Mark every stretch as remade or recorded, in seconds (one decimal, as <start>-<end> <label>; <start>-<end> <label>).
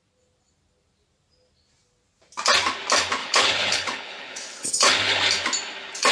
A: 0.0-3.2 recorded; 3.2-5.2 remade; 5.2-6.1 recorded